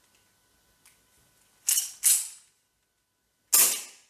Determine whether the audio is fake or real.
real